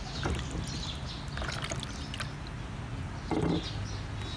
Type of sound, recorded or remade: recorded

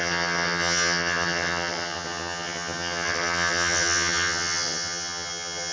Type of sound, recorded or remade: remade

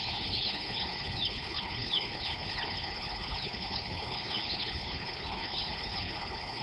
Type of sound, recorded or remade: remade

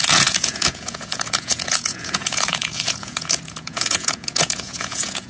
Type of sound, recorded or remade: remade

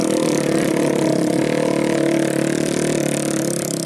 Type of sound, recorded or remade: recorded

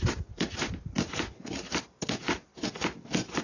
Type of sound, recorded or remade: recorded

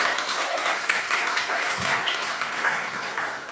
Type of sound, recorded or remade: remade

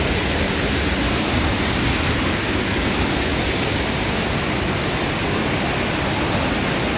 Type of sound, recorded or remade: recorded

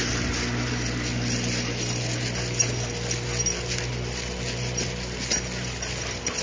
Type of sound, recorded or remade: recorded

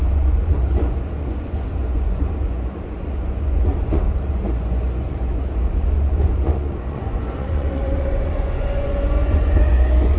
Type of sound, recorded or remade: remade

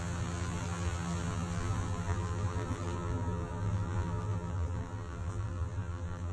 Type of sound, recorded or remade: remade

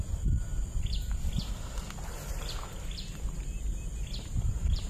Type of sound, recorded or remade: recorded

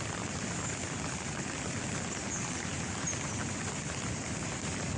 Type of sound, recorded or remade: recorded